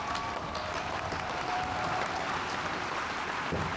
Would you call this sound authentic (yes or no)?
no